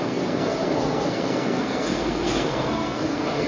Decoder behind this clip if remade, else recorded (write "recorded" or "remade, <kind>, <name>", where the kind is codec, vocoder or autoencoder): remade, codec, SNAC